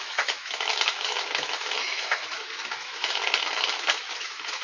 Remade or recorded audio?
remade